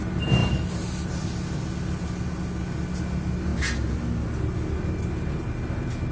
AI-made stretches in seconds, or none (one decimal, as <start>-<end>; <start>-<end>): none